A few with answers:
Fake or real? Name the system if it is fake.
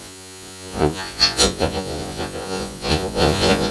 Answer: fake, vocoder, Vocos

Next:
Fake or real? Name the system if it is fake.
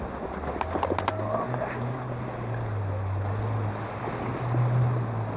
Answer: real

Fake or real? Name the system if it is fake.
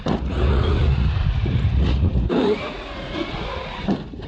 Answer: fake, vocoder, Vocos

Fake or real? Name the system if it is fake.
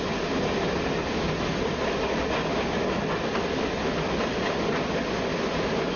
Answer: real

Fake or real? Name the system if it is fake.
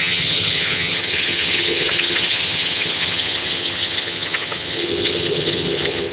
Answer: fake, vocoder, HiFi-GAN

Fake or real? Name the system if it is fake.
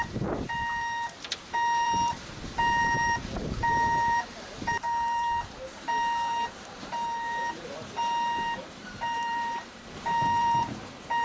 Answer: fake, vocoder, BigVGAN v2